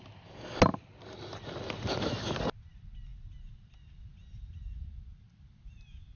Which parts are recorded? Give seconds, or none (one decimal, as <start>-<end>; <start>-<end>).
0.0-6.2